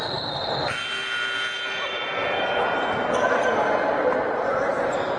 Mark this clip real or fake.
real